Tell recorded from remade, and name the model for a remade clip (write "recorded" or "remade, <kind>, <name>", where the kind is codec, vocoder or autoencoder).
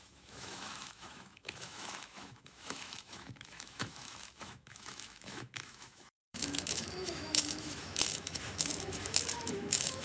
remade, autoencoder, DAC-VAE